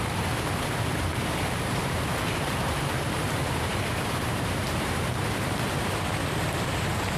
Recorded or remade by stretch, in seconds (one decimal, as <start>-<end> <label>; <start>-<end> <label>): 0.0-6.2 remade; 6.2-7.2 recorded

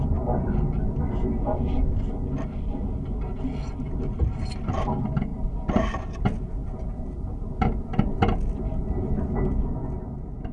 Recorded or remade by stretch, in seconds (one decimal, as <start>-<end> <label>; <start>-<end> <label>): 0.0-6.6 recorded; 6.6-8.1 remade; 8.1-10.5 recorded

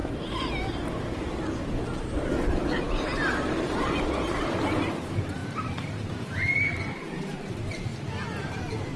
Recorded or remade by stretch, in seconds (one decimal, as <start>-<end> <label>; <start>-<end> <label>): 0.0-7.9 remade; 7.9-8.4 recorded; 8.4-9.0 remade

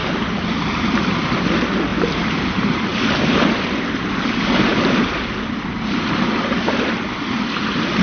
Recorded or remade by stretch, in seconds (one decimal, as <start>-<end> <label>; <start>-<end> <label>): 0.0-1.9 recorded; 1.9-3.5 remade; 3.5-4.7 recorded; 4.7-5.2 remade; 5.2-8.0 recorded

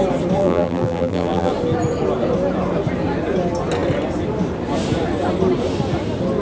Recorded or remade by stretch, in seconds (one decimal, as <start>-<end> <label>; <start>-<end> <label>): 0.0-0.4 recorded; 0.4-1.5 remade; 1.5-6.4 recorded

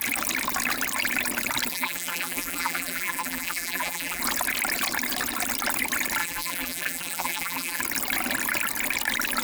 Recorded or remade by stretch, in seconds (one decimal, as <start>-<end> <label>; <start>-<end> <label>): 0.0-1.7 recorded; 1.7-4.2 remade; 4.2-6.2 recorded; 6.2-7.8 remade; 7.8-9.4 recorded

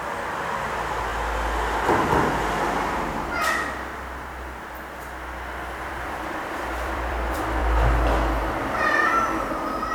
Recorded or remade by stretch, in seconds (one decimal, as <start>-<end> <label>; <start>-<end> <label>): 0.0-1.1 remade; 1.1-5.8 recorded; 5.8-7.6 remade; 7.6-8.5 recorded; 8.5-9.9 remade